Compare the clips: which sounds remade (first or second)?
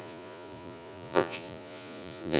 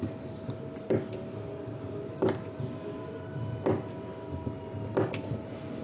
first